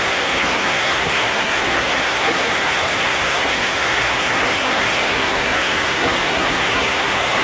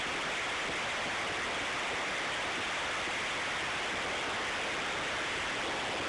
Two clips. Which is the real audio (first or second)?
second